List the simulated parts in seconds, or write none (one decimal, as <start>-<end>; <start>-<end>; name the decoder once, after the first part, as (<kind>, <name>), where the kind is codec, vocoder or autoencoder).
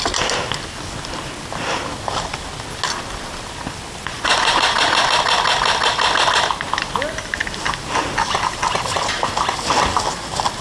4.0-5.1 (vocoder, Vocos)